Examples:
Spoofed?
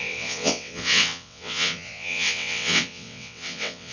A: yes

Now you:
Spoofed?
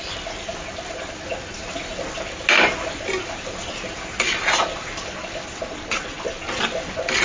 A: no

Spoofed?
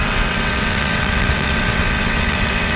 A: yes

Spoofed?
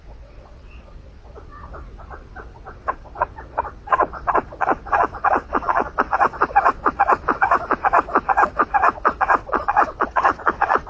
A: yes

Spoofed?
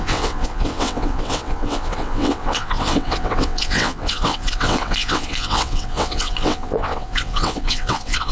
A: yes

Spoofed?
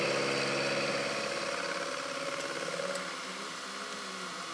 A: no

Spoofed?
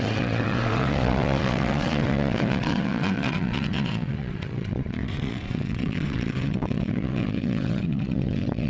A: yes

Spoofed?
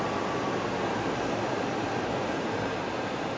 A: no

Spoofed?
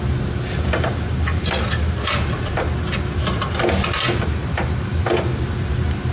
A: no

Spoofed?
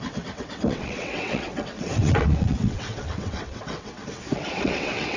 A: yes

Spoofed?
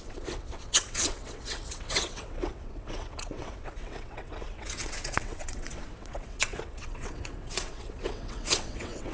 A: yes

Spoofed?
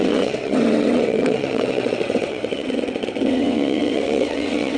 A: yes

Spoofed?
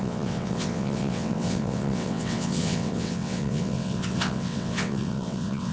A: yes